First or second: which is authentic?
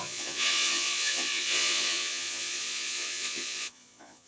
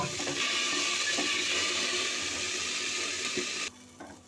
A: second